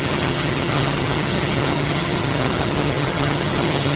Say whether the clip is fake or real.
fake